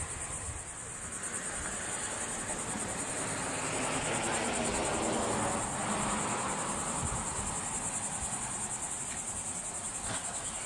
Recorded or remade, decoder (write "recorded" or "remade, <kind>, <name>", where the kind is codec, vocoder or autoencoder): recorded